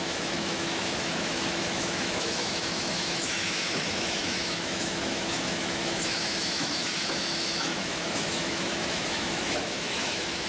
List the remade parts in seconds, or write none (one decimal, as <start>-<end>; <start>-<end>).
0.0-10.5